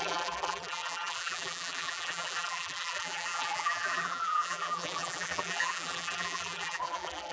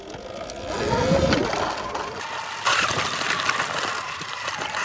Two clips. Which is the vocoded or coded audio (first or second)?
first